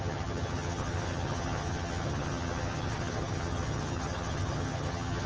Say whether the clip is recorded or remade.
remade